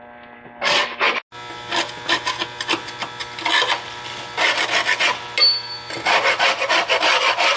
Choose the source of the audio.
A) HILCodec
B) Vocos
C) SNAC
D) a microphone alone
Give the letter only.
D